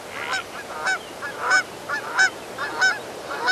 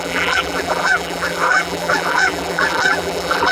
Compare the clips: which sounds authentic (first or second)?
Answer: first